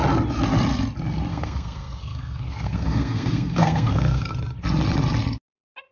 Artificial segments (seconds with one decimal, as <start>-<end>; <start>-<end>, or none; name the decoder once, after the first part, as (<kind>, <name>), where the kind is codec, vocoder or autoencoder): 1.3-4.3 (codec, SNAC)